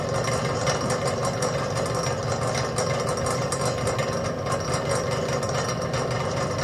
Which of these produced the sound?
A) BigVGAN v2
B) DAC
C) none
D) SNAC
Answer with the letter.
C